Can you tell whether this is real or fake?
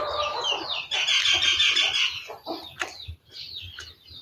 real